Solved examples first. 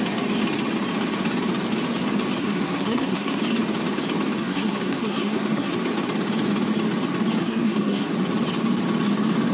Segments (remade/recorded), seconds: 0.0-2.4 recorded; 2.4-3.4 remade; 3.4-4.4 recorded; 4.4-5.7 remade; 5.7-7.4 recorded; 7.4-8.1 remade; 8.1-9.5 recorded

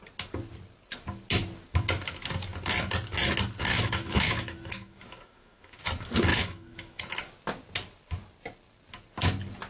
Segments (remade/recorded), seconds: 0.0-3.7 recorded; 3.7-5.8 remade; 5.8-6.3 recorded; 6.3-7.0 remade; 7.0-9.7 recorded

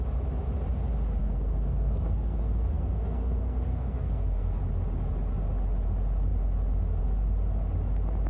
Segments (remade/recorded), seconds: 0.0-1.2 recorded; 1.2-4.6 remade; 4.6-8.3 recorded

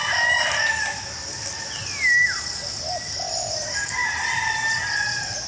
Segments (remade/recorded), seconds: 0.0-5.5 recorded

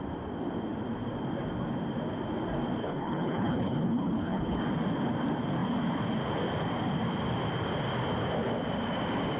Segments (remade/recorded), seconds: 0.0-2.8 recorded; 2.8-4.6 remade; 4.6-9.4 recorded

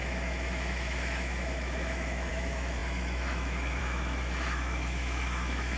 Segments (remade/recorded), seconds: 0.0-5.8 remade

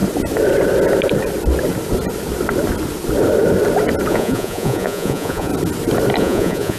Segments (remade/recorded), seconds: 0.0-4.1 recorded; 4.1-5.5 remade; 5.5-6.2 recorded; 6.2-6.8 remade